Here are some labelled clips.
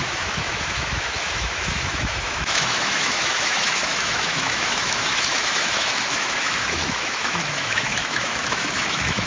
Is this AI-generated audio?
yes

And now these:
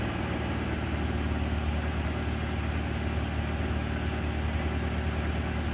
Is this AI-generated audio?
no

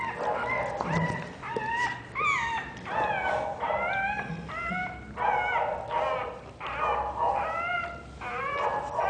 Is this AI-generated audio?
no